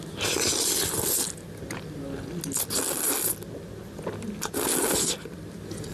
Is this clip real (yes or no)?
yes